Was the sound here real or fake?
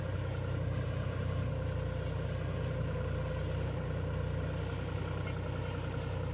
real